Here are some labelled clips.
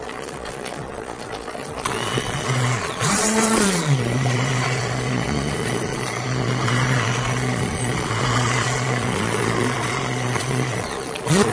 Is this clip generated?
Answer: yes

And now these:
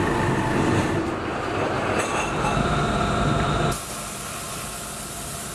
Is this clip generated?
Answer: no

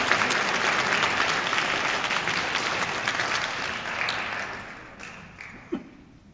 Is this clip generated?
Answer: no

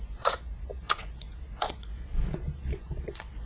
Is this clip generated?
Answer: yes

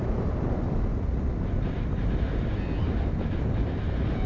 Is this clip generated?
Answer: no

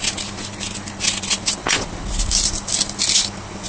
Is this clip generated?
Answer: no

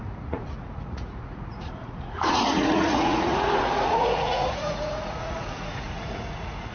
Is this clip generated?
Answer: yes